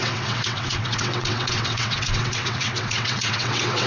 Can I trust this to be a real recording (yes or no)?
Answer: no